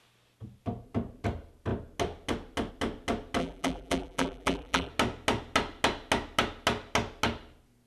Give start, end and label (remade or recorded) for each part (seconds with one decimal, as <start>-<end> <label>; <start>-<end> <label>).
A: 0.0-3.4 recorded; 3.4-4.9 remade; 4.9-7.9 recorded